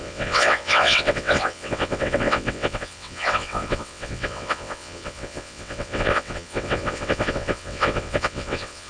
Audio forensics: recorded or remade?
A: remade